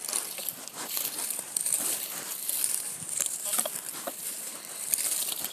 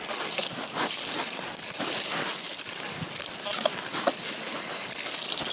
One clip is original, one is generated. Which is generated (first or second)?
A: first